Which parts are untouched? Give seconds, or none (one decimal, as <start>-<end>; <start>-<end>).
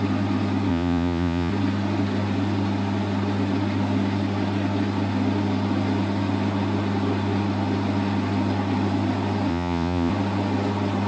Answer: 0.0-0.7; 1.5-9.5; 10.1-11.1